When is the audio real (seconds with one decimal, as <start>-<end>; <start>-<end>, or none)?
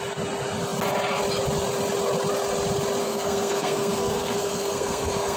0.0-3.0